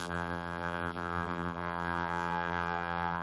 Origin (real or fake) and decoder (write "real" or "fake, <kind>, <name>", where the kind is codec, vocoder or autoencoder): fake, vocoder, BigVGAN v2